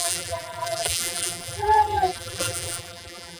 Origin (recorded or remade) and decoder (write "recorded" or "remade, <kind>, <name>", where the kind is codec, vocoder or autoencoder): remade, vocoder, BigVGAN v2